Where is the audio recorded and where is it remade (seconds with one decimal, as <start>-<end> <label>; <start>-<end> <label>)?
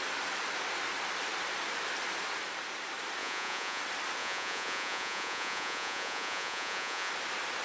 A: 0.0-3.2 recorded; 3.2-3.8 remade; 3.8-4.2 recorded; 4.2-7.1 remade; 7.1-7.6 recorded